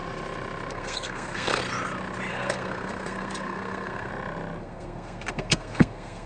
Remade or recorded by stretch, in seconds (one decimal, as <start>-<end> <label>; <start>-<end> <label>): 0.0-0.7 recorded; 0.7-1.6 remade; 1.6-2.3 recorded; 2.3-4.1 remade; 4.1-4.6 recorded; 4.6-6.3 remade